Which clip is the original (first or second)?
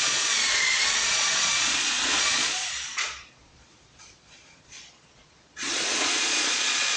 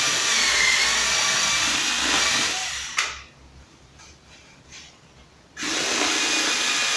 second